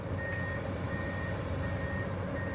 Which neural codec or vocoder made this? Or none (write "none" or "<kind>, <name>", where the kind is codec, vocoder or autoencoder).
none